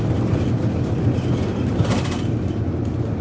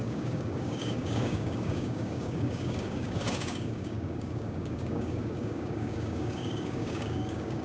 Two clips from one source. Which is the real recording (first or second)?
first